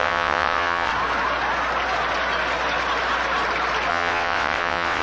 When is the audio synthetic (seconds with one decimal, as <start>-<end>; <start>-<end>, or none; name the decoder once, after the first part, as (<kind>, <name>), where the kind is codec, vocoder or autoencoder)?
0.0-0.9 (vocoder, WaveNeXt); 3.9-5.0